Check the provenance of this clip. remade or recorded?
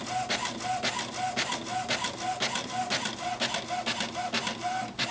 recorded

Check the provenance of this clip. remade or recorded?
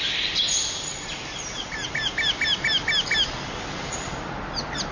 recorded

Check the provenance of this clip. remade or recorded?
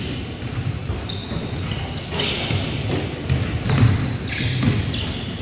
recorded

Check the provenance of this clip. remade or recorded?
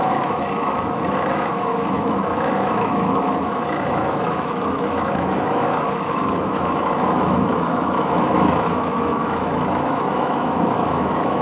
remade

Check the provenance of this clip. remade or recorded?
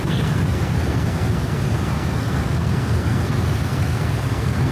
remade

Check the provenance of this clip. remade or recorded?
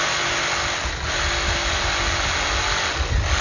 recorded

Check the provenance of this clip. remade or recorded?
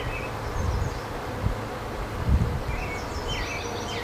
recorded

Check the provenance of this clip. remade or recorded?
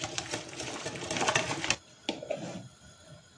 recorded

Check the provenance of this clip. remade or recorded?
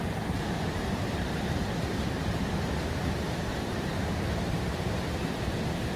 remade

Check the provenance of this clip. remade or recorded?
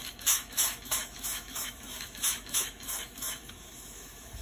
remade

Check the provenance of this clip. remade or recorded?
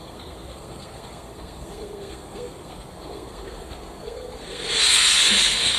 remade